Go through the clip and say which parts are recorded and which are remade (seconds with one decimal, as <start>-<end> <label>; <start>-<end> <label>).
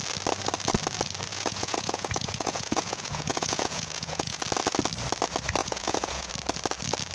0.0-1.3 recorded; 1.3-4.4 remade; 4.4-5.6 recorded; 5.6-6.3 remade; 6.3-7.1 recorded